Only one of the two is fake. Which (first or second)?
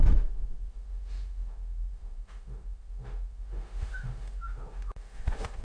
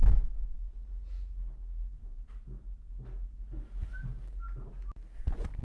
first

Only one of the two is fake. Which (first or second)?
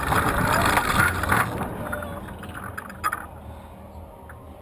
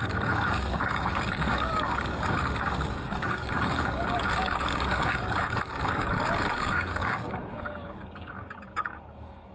second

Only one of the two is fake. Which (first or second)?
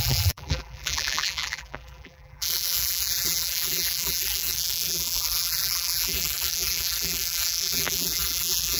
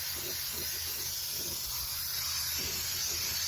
first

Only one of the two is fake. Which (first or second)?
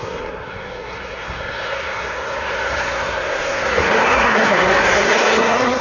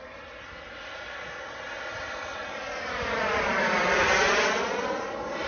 first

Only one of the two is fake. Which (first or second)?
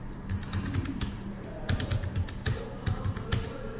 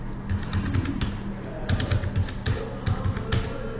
first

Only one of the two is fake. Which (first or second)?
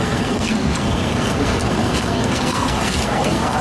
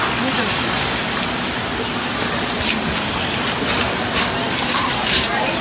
first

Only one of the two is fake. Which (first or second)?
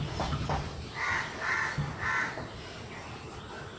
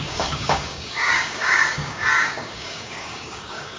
second